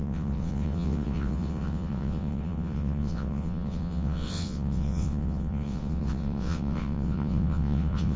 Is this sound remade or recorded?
remade